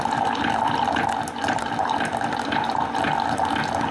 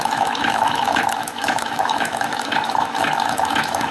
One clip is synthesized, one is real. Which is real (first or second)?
first